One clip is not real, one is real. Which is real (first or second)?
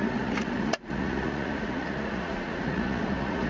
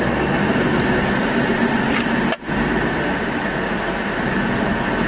second